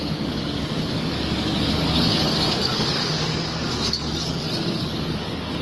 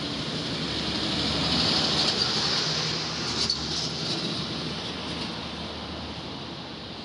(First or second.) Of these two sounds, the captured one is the second